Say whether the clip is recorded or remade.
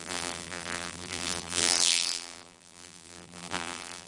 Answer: remade